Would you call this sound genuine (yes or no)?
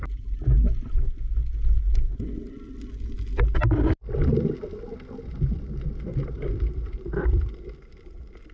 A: yes